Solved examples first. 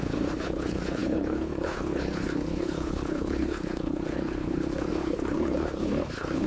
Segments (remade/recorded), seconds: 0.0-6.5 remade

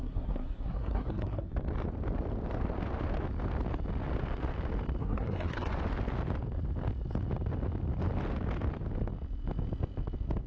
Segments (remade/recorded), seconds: 0.0-1.5 remade; 1.5-5.0 recorded; 5.0-5.7 remade; 5.7-10.5 recorded